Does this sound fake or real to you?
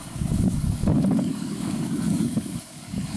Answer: fake